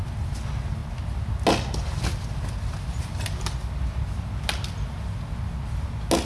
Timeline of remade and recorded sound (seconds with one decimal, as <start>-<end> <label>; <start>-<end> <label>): 0.0-6.2 recorded